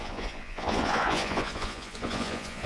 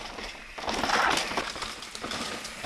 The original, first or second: second